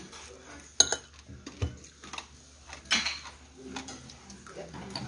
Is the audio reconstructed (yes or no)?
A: no